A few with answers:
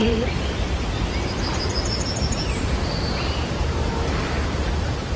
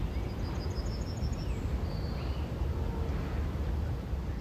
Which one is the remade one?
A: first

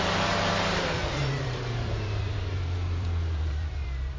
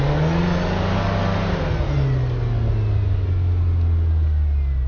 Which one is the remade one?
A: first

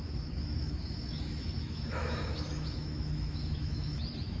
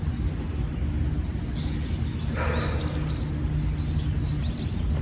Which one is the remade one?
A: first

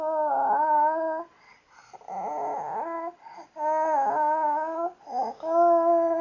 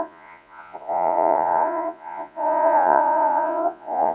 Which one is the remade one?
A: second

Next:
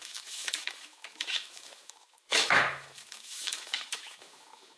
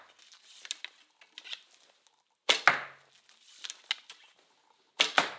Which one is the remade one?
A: first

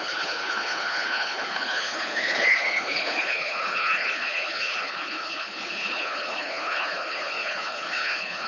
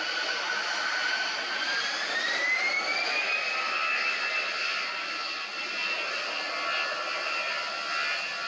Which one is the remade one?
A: first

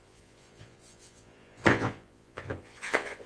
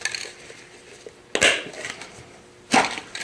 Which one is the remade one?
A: first